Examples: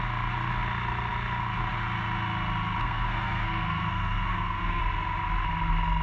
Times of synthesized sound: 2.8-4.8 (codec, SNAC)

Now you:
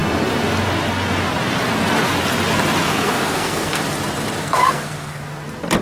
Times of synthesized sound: 2.9-3.8 (codec, SNAC); 4.4-5.2

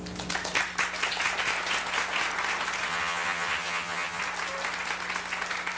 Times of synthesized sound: 2.9-4.2 (vocoder, HiFi-GAN)

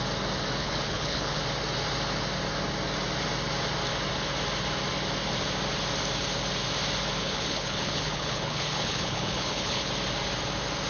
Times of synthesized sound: 0.6-1.4 (codec, HILCodec); 7.2-9.9

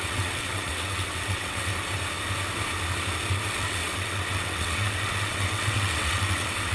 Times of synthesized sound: 0.0-1.7 (vocoder, WaveNeXt); 3.4-6.7

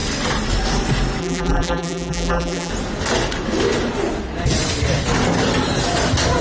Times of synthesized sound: 1.2-2.7 (vocoder, BigVGAN v2)